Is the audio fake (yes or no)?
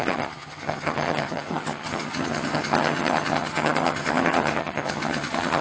yes